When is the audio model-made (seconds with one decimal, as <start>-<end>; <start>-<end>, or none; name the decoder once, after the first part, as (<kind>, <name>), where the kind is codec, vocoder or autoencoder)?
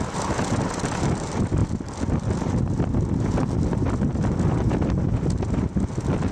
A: none